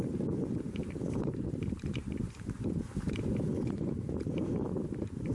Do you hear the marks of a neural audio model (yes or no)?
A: yes